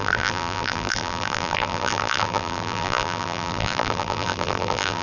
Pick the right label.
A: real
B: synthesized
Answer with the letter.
B